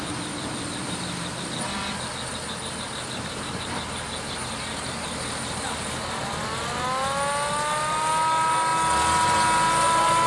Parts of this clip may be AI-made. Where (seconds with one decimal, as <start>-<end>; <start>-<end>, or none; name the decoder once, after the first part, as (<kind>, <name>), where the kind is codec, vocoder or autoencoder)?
none